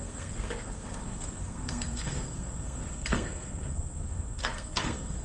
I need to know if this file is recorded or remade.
remade